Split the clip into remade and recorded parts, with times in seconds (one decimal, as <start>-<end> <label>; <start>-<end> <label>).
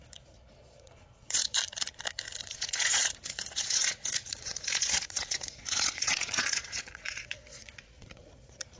0.0-1.6 remade; 1.6-2.4 recorded; 2.4-8.8 remade